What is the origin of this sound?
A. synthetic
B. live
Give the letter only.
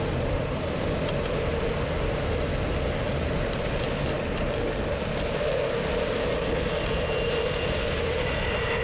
B